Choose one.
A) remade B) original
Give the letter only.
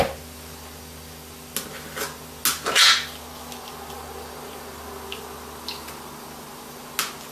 B